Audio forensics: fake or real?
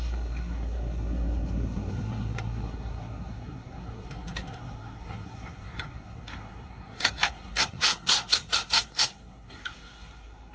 fake